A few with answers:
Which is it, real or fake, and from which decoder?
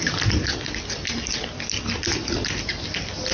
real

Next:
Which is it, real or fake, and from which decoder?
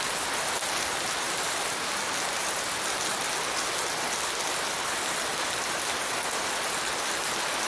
real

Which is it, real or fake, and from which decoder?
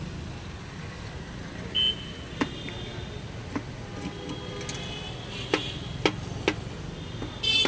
real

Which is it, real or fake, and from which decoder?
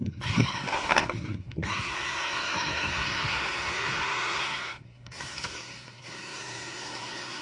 fake, codec, SNAC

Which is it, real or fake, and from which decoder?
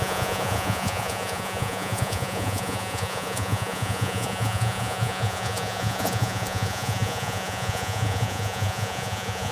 fake, vocoder, Vocos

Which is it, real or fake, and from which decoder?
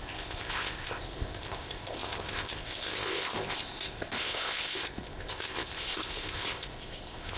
fake, codec, ZipCodec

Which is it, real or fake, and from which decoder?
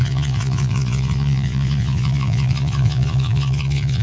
fake, vocoder, Vocos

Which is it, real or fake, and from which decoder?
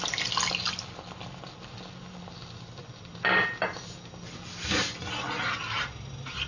real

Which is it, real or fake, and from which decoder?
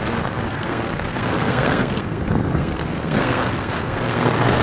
fake, codec, SNAC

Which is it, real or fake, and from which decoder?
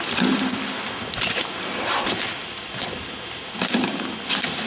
fake, vocoder, BigVGAN v2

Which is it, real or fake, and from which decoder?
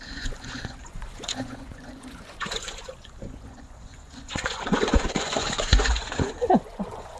fake, vocoder, Vocos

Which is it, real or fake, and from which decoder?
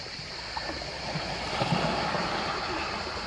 fake, vocoder, BigVGAN v2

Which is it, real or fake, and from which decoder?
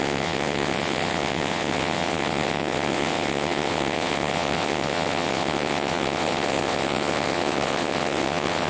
fake, vocoder, WaveNeXt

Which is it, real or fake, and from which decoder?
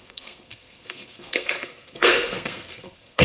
fake, codec, SNAC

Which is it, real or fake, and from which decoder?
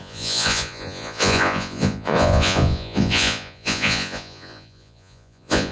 fake, vocoder, Vocos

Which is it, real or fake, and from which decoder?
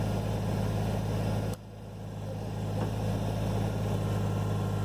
real